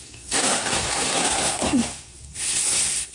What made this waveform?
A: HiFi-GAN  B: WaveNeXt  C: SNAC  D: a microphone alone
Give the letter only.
C